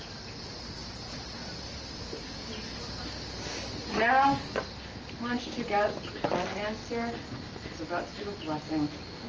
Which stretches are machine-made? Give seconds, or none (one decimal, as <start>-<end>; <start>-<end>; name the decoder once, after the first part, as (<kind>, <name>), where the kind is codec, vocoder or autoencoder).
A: none